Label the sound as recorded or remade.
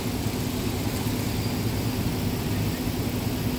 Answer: recorded